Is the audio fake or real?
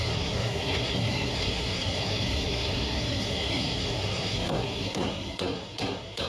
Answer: fake